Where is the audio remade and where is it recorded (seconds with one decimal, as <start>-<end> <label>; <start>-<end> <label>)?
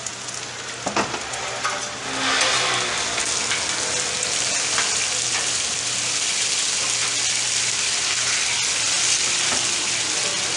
0.0-10.6 recorded